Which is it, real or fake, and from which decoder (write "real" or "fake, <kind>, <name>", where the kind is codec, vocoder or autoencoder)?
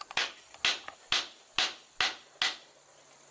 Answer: real